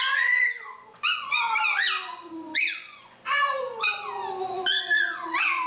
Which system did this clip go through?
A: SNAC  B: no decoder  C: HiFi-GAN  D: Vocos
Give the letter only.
D